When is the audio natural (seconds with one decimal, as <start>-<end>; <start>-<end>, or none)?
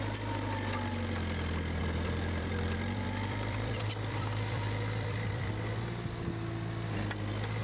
0.0-1.8; 5.5-7.6